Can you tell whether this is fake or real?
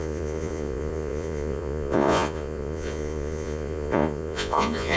fake